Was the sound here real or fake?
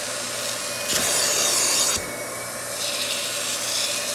real